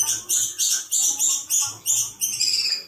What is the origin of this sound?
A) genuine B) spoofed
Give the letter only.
A